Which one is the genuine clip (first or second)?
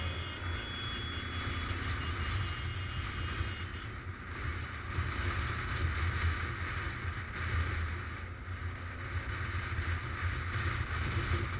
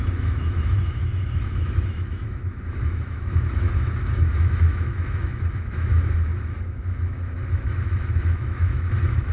first